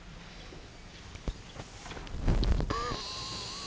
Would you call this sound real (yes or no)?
yes